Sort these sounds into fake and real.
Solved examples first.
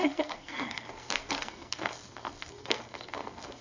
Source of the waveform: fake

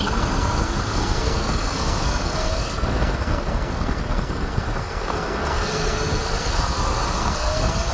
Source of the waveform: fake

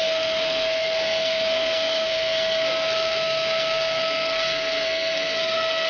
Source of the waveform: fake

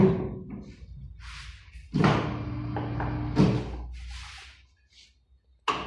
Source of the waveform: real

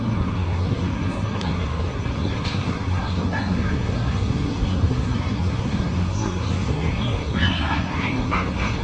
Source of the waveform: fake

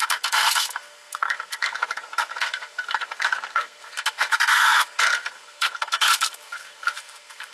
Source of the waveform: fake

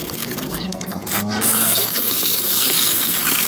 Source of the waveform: fake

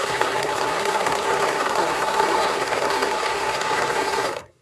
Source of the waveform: fake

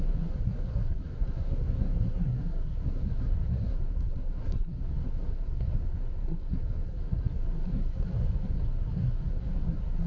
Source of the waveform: fake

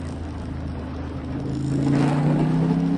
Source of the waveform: real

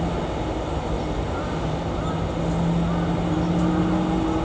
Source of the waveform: real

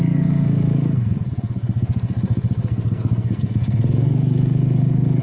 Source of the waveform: fake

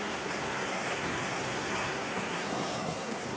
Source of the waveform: fake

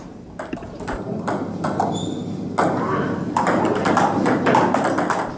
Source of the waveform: real